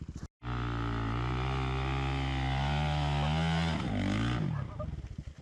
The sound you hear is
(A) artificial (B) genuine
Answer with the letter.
B